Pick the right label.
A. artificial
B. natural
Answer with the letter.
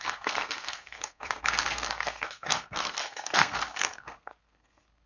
A